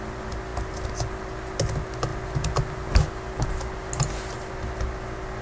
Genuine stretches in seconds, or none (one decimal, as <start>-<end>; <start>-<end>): 0.0-5.4